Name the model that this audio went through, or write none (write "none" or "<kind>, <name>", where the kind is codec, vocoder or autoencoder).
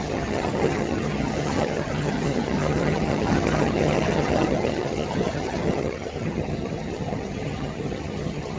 vocoder, HiFi-GAN